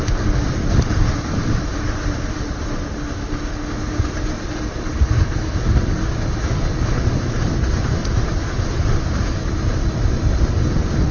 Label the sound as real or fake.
real